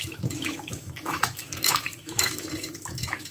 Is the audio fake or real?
fake